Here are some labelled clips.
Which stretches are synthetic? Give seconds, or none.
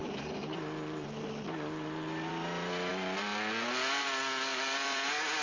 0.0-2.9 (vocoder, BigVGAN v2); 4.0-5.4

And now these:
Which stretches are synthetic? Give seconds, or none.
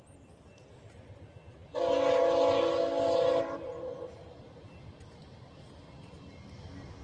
none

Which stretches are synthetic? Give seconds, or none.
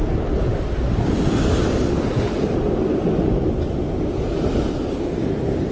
none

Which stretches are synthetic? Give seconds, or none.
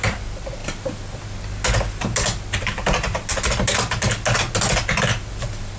none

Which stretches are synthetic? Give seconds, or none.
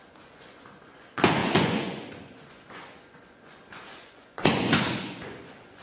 0.0-5.8 (vocoder, Vocos)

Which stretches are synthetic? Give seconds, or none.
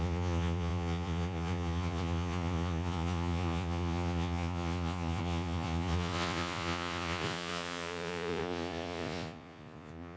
0.0-10.2 (vocoder, Vocos)